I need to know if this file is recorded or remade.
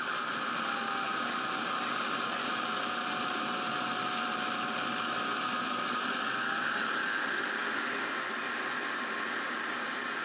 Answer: recorded